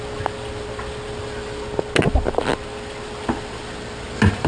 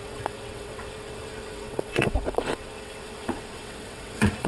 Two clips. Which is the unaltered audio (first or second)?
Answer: first